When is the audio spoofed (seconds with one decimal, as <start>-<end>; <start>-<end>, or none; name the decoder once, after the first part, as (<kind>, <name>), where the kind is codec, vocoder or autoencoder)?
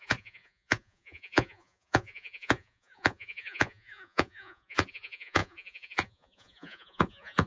0.0-7.5 (vocoder, Vocos)